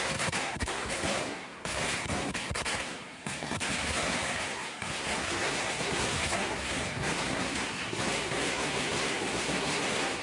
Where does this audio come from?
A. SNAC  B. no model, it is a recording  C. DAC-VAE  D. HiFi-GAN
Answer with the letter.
A